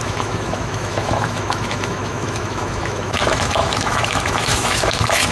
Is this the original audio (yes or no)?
no